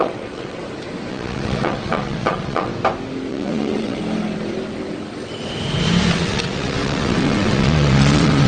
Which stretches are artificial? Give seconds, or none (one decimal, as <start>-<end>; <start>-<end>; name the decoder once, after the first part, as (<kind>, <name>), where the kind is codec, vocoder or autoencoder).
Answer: 0.0-0.6 (vocoder, WaveNeXt); 1.1-2.7; 3.3-4.0; 6.1-8.5